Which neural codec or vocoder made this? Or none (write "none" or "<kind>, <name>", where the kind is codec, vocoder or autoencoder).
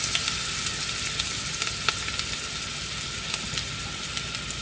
none